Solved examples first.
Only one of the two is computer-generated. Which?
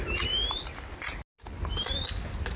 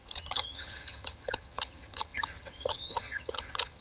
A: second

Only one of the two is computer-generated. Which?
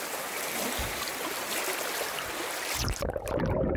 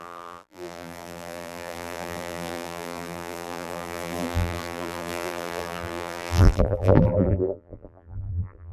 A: second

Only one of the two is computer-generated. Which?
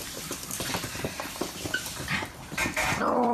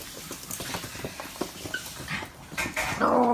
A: first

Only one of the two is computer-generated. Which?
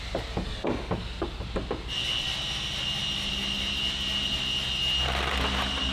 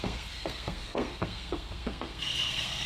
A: second